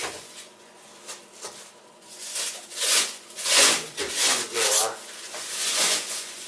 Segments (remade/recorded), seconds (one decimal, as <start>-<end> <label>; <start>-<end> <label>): 0.0-0.9 remade; 0.9-1.9 recorded; 1.9-6.5 remade